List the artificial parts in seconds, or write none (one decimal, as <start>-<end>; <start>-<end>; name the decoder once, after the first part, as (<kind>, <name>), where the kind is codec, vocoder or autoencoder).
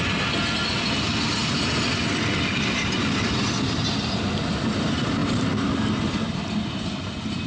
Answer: none